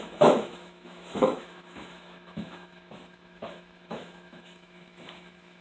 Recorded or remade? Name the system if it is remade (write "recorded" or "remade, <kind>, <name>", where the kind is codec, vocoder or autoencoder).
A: remade, autoencoder, DAC-VAE